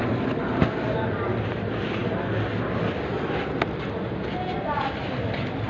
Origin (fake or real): real